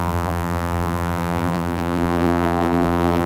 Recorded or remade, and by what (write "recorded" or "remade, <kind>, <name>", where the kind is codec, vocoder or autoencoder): remade, vocoder, BigVGAN v2